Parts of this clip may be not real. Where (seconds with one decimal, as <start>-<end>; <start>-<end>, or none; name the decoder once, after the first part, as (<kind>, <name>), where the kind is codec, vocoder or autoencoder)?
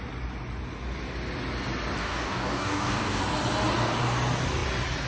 2.0-3.2 (codec, DAC)